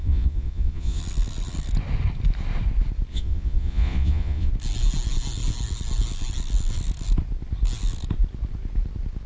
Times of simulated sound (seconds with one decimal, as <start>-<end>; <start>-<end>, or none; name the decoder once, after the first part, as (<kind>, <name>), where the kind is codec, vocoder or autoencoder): 0.0-1.0 (vocoder, Vocos); 3.1-4.5